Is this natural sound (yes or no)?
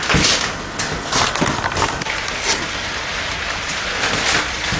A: yes